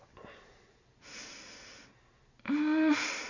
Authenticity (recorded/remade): recorded